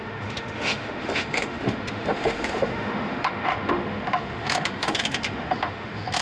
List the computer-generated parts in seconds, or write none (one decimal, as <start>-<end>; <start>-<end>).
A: 0.0-6.2